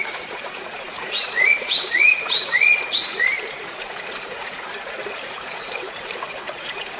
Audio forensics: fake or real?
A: fake